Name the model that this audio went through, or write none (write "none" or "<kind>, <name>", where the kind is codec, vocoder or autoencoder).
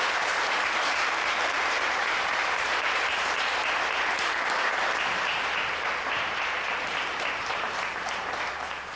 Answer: vocoder, BigVGAN v2